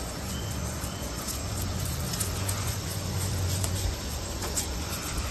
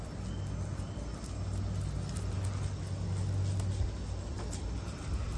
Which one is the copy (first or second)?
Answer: first